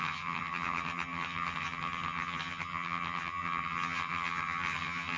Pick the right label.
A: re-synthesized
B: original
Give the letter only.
A